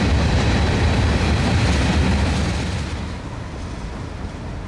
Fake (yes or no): no